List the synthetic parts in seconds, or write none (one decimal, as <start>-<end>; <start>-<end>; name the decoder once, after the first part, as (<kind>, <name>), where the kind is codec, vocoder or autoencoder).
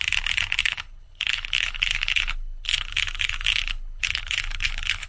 0.6-2.9 (codec, HILCodec); 3.5-5.1